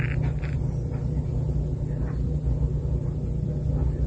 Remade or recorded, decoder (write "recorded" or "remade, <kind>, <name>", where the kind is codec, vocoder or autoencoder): recorded